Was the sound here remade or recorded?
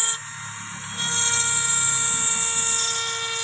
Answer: recorded